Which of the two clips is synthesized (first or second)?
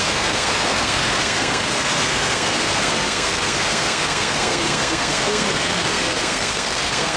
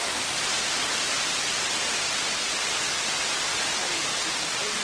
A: first